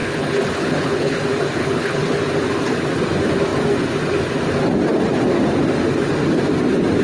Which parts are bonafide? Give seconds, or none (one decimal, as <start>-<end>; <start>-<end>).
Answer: 1.2-1.6; 2.2-7.0